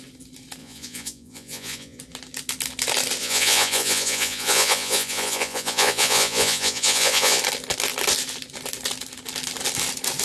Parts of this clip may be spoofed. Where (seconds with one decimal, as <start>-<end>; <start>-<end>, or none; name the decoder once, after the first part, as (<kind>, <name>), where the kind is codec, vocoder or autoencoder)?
0.6-2.0 (vocoder, Vocos); 3.2-7.4